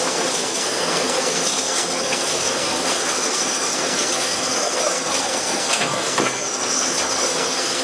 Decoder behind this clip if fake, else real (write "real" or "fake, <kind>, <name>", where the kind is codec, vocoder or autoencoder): fake, codec, SNAC